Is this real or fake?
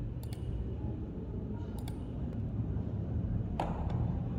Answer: fake